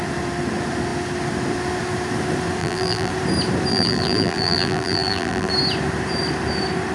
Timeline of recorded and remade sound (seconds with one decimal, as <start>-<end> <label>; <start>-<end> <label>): 0.0-2.6 recorded; 2.6-3.1 remade; 3.1-3.7 recorded; 3.7-5.5 remade; 5.5-6.9 recorded